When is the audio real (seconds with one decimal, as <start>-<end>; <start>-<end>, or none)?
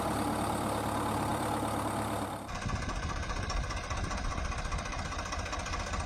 0.0-1.3; 5.0-6.1